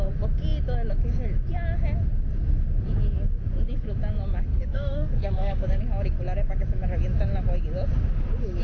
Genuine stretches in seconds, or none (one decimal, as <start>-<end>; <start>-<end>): 0.0-4.5; 5.8-8.6